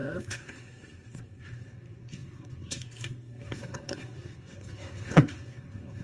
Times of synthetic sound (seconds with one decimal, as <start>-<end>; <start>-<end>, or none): 0.0-6.0